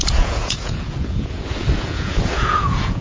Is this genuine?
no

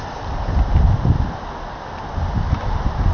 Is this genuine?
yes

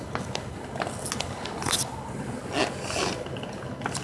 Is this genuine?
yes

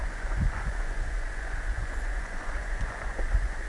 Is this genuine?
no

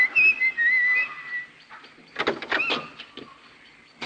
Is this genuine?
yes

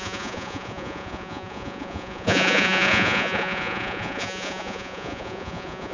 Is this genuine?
no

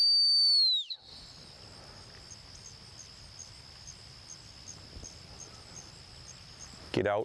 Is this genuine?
yes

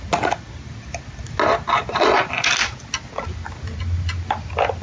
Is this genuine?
yes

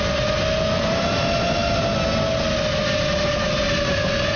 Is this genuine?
yes